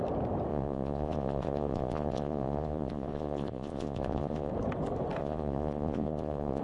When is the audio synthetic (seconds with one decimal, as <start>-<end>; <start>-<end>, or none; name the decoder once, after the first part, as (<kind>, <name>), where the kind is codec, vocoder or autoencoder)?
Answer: 0.5-4.5 (vocoder, Vocos); 5.2-6.6